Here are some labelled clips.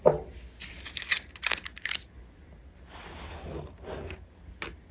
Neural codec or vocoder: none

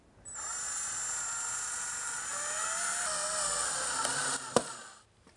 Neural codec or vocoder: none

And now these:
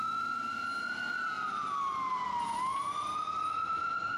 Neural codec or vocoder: none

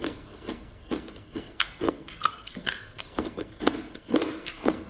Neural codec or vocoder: codec, SNAC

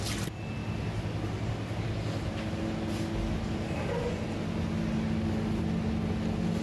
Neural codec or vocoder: none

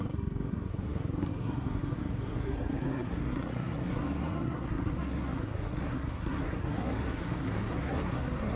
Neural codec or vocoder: codec, SNAC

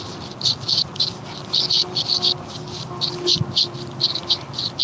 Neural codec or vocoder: none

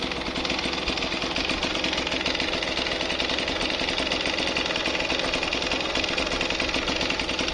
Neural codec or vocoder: none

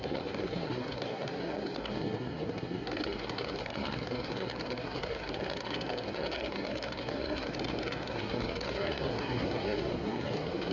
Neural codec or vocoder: codec, SNAC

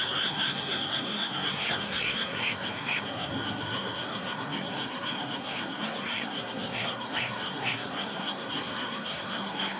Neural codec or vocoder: codec, SNAC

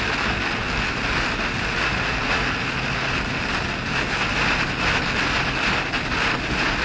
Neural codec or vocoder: none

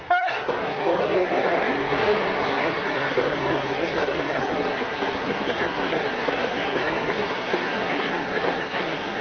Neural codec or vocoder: codec, SNAC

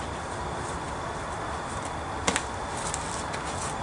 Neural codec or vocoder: none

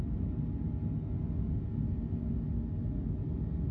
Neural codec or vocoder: none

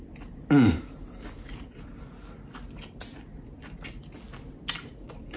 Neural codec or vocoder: none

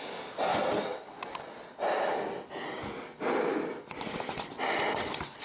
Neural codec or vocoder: none